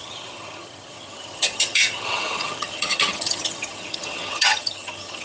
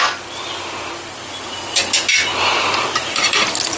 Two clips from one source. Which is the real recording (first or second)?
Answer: second